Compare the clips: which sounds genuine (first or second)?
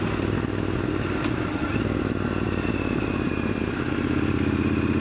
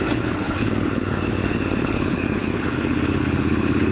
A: first